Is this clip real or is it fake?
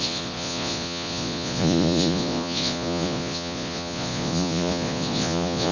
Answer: fake